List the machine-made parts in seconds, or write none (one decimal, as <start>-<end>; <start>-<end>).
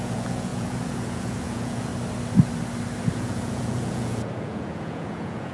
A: 0.0-1.9; 3.1-5.5